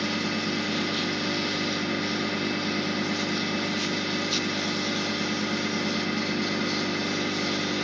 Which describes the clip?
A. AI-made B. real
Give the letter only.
B